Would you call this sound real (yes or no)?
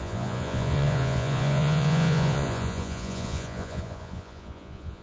no